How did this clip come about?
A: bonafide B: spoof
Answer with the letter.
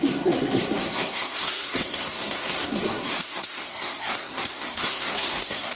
B